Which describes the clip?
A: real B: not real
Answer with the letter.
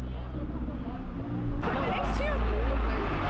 A